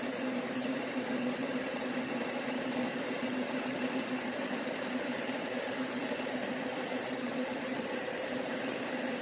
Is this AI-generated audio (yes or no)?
yes